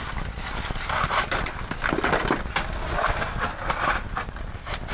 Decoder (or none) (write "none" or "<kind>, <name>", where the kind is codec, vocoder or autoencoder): none